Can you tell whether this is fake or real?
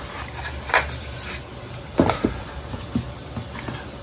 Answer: real